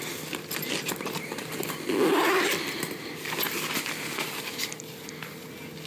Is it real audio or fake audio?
real